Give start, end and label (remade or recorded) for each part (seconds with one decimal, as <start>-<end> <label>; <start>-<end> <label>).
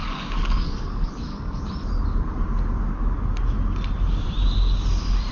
0.0-1.6 remade; 1.6-5.3 recorded